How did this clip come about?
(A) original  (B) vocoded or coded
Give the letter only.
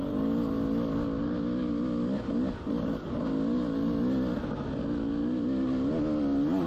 A